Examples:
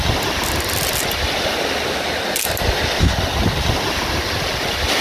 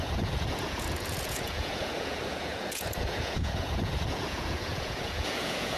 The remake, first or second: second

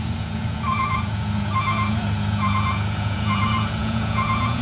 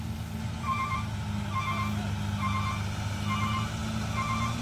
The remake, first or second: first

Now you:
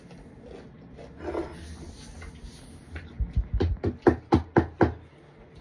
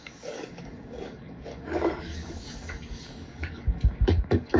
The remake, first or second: second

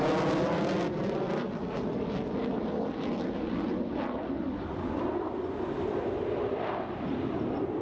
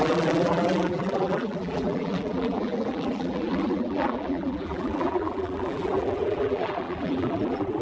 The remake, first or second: second